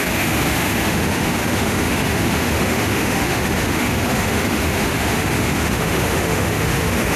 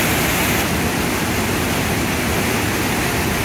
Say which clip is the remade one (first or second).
first